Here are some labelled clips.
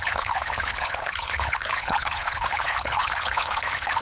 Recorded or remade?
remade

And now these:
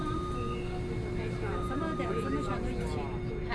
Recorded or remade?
recorded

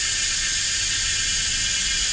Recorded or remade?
recorded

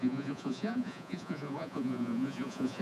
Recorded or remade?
remade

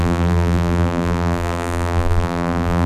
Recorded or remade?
remade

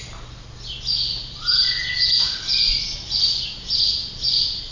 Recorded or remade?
recorded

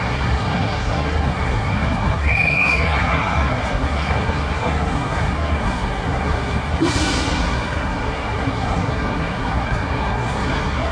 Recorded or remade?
remade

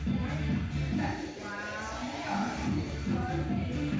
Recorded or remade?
remade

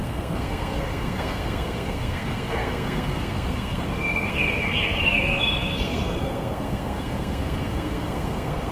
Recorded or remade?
remade